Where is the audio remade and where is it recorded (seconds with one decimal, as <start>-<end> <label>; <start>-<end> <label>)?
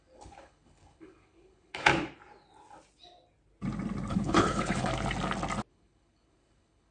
0.0-1.9 remade; 1.9-4.1 recorded; 4.1-4.9 remade; 4.9-5.7 recorded; 5.7-6.9 remade